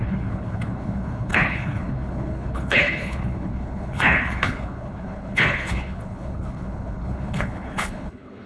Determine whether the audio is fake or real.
fake